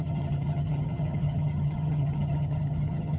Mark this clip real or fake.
fake